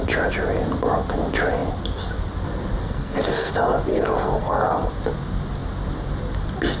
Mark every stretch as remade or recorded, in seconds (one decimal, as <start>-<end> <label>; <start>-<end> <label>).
0.0-2.8 recorded; 2.8-3.5 remade; 3.5-3.9 recorded; 3.9-4.9 remade; 4.9-6.8 recorded